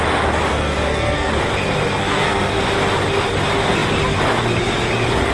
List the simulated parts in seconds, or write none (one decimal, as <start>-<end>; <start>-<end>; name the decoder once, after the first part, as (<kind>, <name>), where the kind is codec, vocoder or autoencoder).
0.5-1.3 (codec, SNAC); 2.0-2.6